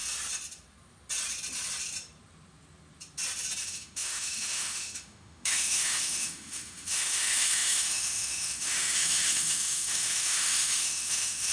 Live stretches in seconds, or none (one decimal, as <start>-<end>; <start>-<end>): 0.0-3.6